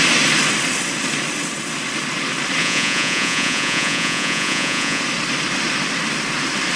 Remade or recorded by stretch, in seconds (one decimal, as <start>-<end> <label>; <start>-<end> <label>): 0.0-2.6 recorded; 2.6-5.0 remade; 5.0-6.8 recorded

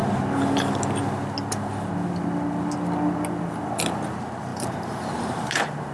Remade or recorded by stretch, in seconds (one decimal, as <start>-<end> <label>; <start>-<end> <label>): 0.0-4.5 recorded; 4.5-5.9 remade

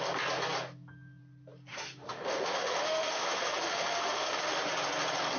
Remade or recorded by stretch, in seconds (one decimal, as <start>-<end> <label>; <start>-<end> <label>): 0.0-1.7 recorded; 1.7-4.6 remade; 4.6-5.4 recorded

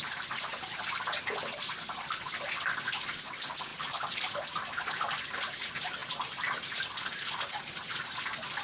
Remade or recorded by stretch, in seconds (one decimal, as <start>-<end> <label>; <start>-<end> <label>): 0.0-8.6 remade

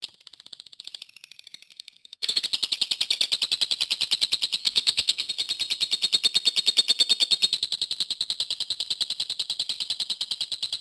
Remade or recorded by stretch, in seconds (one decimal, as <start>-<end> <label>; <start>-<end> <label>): 0.0-1.7 recorded; 1.7-2.4 remade; 2.4-4.6 recorded; 4.6-5.3 remade; 5.3-10.8 recorded